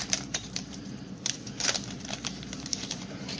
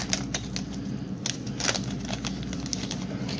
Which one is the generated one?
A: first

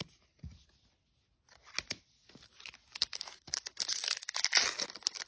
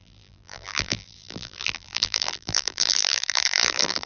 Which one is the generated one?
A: second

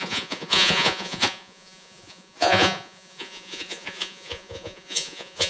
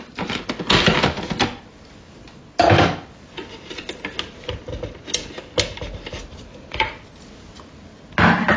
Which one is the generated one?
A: first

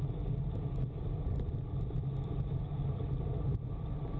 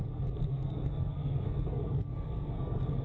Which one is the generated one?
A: second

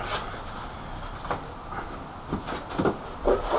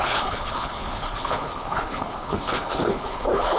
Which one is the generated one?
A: second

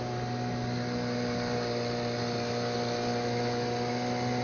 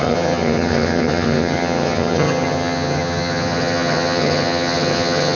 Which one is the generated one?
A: second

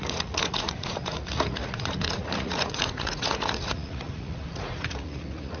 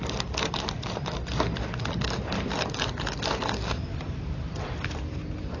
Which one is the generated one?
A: first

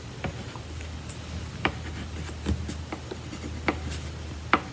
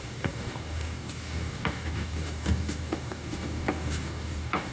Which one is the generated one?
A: second